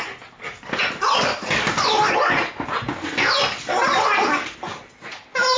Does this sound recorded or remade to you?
recorded